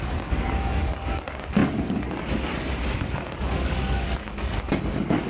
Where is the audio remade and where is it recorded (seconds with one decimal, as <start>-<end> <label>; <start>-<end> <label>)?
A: 0.0-5.3 remade